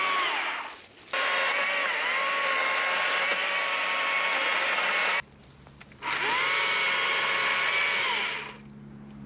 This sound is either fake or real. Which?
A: real